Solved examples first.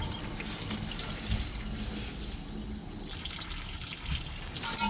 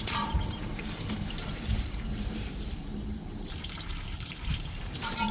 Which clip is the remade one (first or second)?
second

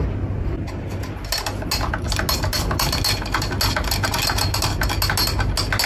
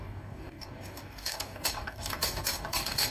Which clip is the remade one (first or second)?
second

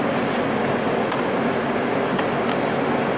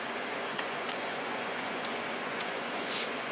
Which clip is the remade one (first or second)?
second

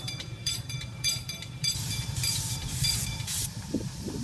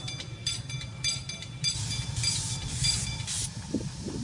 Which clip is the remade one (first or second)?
first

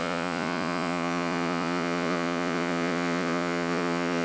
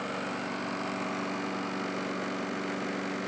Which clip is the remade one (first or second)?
first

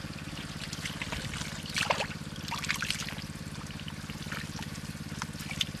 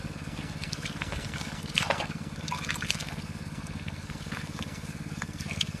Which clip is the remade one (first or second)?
second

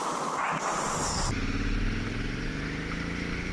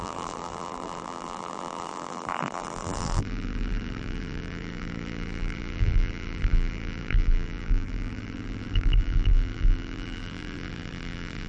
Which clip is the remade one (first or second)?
second